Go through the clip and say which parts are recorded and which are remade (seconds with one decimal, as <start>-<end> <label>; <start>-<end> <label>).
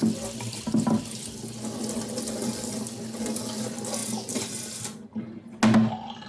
0.0-6.3 recorded